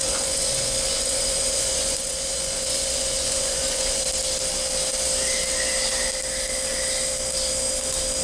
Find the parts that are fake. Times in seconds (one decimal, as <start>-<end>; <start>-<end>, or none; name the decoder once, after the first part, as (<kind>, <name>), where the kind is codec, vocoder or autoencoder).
0.0-4.0 (vocoder, Vocos)